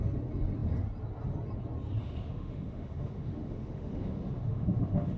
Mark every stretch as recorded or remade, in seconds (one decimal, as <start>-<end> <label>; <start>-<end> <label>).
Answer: 0.0-2.0 recorded; 2.0-5.2 remade